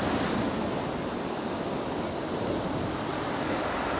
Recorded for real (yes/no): yes